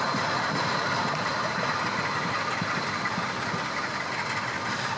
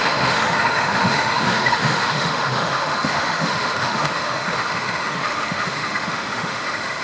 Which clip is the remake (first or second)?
second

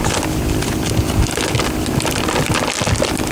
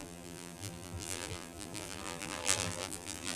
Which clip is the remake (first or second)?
second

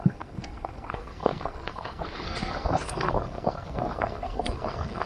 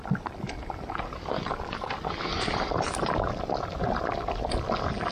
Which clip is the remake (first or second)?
first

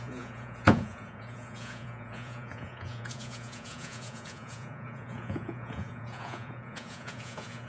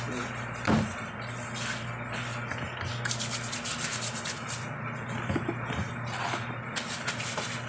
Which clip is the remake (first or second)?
first